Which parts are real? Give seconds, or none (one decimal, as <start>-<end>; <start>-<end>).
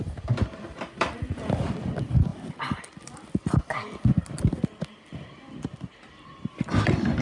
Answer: 0.0-7.2